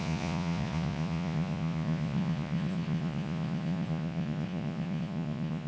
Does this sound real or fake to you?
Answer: fake